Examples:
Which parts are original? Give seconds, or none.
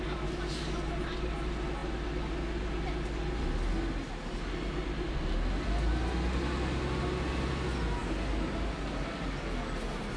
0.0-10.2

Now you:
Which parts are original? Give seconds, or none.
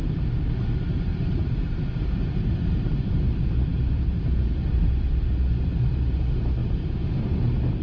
0.0-1.1; 4.9-6.6; 7.3-7.8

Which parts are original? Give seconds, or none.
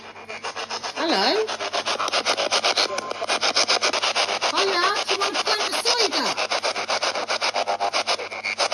0.0-8.7